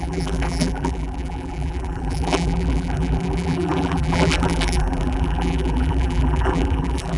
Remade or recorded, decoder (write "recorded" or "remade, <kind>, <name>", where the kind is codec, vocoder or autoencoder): remade, vocoder, BigVGAN v2